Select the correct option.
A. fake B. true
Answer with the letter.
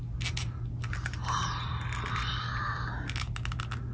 B